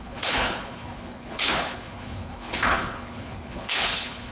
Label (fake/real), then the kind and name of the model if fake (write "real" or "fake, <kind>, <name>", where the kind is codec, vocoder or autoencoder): fake, codec, HILCodec